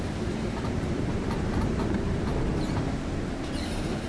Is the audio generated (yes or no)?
yes